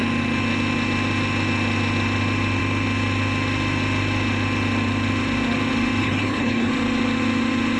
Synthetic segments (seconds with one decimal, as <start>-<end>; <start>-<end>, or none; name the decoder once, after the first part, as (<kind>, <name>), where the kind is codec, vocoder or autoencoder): 6.0-6.7 (codec, HILCodec)